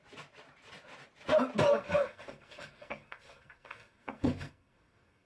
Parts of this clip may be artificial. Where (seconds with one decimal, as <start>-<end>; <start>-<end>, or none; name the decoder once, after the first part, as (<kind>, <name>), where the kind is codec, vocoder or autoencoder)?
1.7-5.3 (codec, SNAC)